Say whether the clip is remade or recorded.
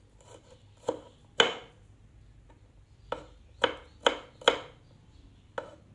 recorded